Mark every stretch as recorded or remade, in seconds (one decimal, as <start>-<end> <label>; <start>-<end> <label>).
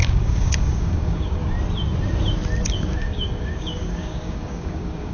0.0-1.4 remade; 1.4-2.7 recorded; 2.7-5.1 remade